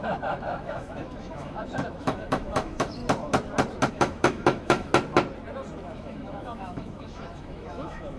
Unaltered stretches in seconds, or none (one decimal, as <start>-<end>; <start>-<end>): 3.0-3.9; 4.9-5.9